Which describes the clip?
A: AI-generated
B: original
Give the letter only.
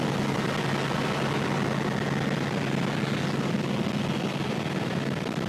B